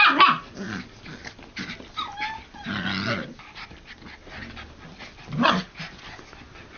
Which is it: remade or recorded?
recorded